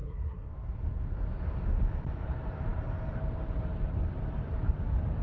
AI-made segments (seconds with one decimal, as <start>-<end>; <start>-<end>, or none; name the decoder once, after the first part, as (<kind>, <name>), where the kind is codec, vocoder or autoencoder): 0.0-0.5 (codec, SNAC)